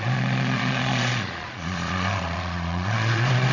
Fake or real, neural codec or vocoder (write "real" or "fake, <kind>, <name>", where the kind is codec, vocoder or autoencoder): fake, vocoder, Vocos